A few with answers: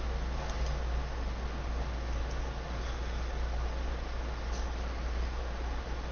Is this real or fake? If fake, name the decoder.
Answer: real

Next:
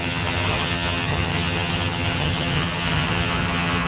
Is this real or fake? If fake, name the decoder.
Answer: fake, vocoder, HiFi-GAN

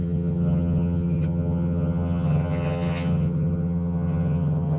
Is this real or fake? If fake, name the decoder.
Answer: fake, vocoder, HiFi-GAN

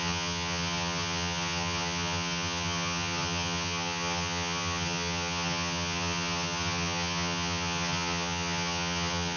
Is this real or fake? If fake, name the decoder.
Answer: fake, vocoder, HiFi-GAN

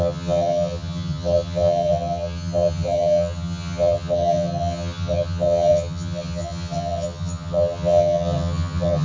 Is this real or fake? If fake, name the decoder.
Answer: fake, vocoder, HiFi-GAN